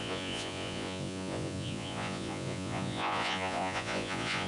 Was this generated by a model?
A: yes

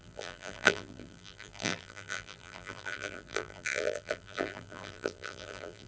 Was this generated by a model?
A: yes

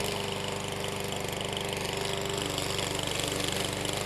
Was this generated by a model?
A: no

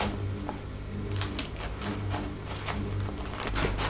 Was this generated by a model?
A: no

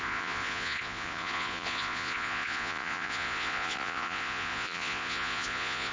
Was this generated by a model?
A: yes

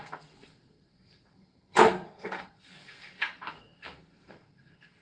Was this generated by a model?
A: yes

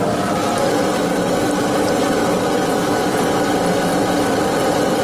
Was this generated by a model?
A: no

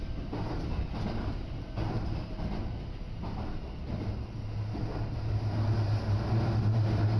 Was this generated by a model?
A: no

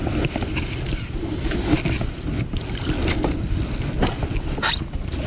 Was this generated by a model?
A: no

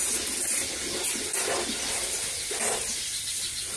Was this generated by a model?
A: no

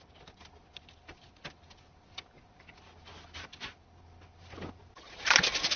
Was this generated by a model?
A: no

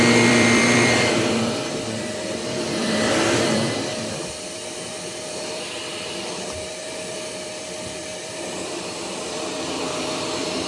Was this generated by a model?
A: yes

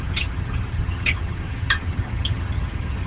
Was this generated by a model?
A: yes